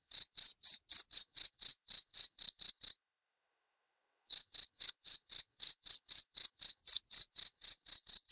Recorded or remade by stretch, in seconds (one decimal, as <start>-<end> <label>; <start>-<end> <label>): 0.0-0.5 remade; 0.5-1.1 recorded; 1.1-6.8 remade; 6.8-7.3 recorded; 7.3-8.3 remade